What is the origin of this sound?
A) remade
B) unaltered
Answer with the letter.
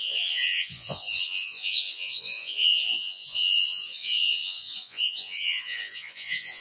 A